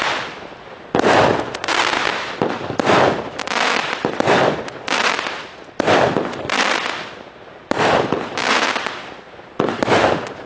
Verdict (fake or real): real